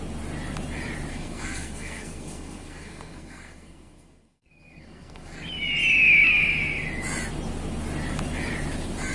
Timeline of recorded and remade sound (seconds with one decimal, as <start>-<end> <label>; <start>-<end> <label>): 0.0-1.1 recorded; 1.1-5.4 remade; 5.4-9.1 recorded